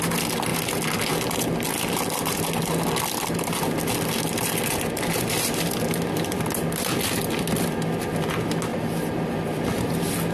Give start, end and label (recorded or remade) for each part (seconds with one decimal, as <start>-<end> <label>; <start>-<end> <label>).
0.0-0.5 recorded; 0.5-4.7 remade; 4.7-8.7 recorded; 8.7-9.3 remade; 9.3-10.3 recorded